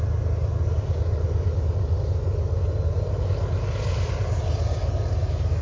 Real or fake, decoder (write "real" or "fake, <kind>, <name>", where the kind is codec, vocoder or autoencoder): real